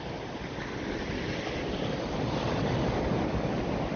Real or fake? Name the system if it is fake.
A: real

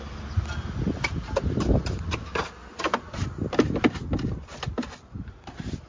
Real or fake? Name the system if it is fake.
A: real